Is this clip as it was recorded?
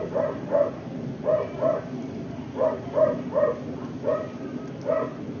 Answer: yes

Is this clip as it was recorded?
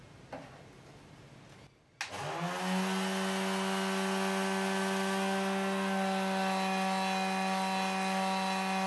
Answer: yes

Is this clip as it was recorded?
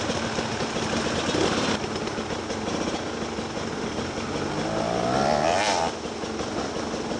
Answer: yes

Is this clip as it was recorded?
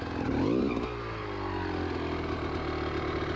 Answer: yes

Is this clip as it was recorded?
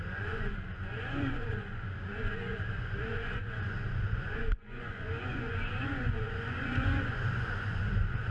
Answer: no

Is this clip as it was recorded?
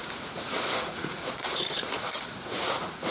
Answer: no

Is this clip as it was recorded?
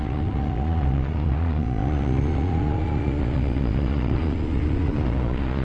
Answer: no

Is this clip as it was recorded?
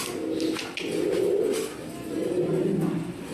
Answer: yes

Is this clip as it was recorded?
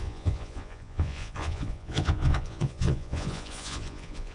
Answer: no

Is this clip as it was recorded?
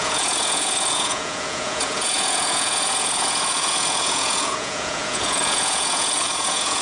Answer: no